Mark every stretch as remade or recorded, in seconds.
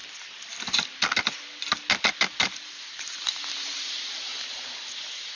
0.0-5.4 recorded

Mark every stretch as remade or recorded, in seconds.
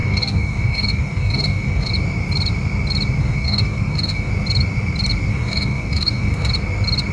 0.0-1.9 remade; 1.9-3.2 recorded; 3.2-4.3 remade; 4.3-5.3 recorded; 5.3-6.5 remade; 6.5-7.1 recorded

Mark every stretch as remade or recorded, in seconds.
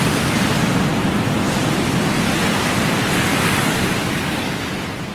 0.0-3.3 recorded; 3.3-4.6 remade; 4.6-5.1 recorded